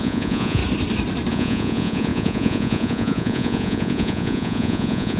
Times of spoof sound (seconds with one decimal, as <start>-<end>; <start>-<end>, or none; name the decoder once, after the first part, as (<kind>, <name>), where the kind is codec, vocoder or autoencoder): 0.0-0.6 (vocoder, Vocos); 1.3-5.2